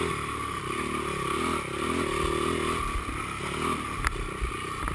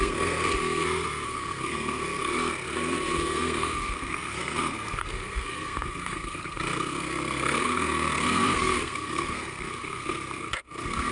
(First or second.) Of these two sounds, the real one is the first